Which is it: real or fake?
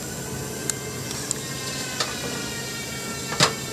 real